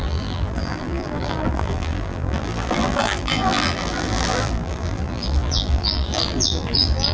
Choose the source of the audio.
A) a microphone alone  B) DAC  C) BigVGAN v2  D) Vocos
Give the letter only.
C